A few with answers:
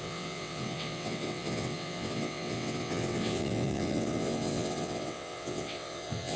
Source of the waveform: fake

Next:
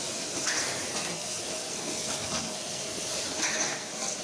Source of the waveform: fake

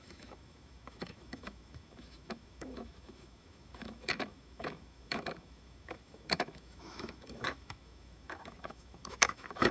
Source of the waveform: fake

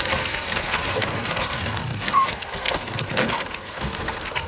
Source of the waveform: fake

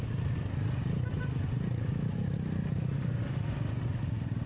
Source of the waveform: real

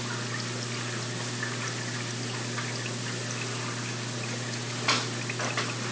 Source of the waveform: real